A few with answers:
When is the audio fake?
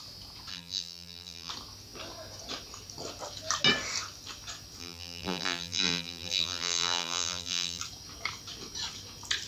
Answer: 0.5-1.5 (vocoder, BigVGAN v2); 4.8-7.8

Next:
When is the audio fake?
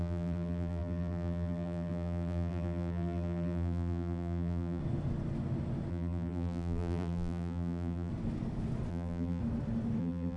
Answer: 0.0-4.8 (vocoder, BigVGAN v2); 5.9-8.1; 8.9-9.4; 10.0-10.4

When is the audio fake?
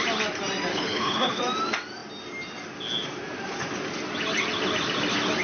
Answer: 0.7-1.4 (codec, HILCodec)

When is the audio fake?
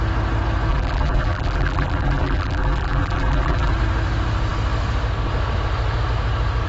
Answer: 0.7-3.7 (vocoder, BigVGAN v2)